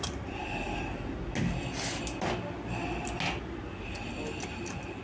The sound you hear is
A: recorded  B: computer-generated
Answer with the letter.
A